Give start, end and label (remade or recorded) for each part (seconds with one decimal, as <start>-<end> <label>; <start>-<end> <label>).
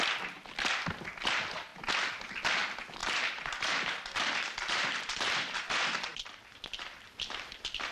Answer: 0.0-3.0 recorded; 3.0-7.9 remade